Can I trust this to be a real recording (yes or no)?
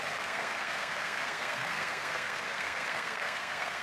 no